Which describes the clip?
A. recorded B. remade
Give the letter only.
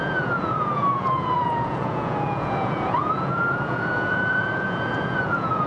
B